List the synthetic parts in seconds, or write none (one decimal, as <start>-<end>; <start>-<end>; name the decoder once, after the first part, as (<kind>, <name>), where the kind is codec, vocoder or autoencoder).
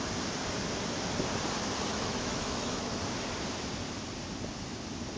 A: 1.9-3.0 (autoencoder, DAC-VAE)